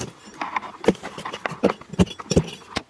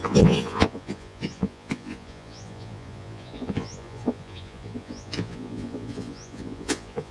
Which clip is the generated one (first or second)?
second